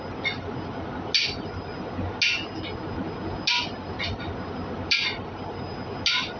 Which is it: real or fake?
real